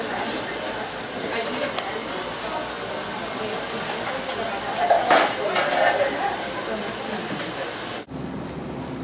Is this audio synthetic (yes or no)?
no